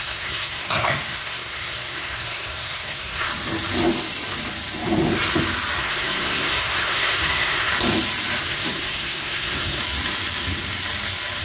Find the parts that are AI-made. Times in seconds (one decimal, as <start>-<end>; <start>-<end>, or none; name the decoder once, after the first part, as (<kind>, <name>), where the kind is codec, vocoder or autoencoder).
0.0-3.3 (codec, SNAC); 5.8-7.7; 8.4-9.8